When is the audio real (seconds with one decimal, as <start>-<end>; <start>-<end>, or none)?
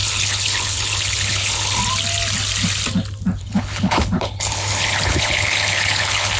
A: 1.8-3.4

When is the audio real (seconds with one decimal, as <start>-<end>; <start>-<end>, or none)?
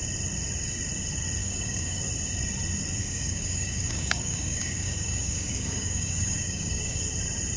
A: 0.0-1.4; 2.0-3.0; 7.0-7.6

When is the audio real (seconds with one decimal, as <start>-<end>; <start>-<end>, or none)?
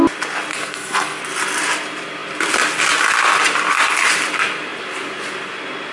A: 0.0-0.5; 1.2-5.9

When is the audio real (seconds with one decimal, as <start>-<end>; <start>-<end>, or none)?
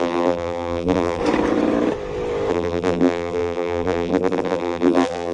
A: 1.2-2.5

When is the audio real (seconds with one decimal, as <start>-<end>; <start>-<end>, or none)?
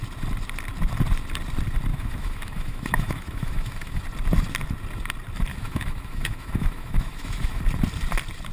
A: 0.0-1.9; 4.0-5.5; 7.6-8.5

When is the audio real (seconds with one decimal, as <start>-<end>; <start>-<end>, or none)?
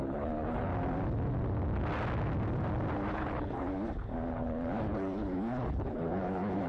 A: 0.7-3.1; 3.7-4.3